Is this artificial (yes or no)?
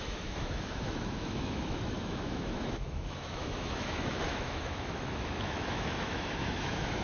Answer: yes